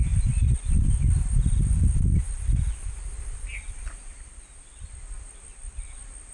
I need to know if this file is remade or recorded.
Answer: recorded